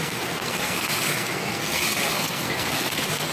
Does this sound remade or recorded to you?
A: remade